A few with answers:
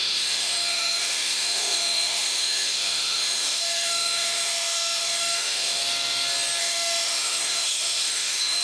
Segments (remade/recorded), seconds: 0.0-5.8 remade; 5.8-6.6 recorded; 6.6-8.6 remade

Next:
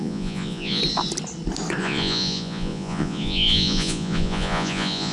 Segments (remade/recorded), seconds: 0.0-0.8 remade; 0.8-1.8 recorded; 1.8-5.1 remade

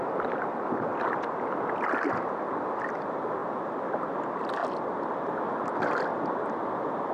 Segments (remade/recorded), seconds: 0.0-0.9 remade; 0.9-2.2 recorded; 2.2-3.4 remade; 3.4-4.0 recorded; 4.0-4.6 remade; 4.6-5.8 recorded; 5.8-7.1 remade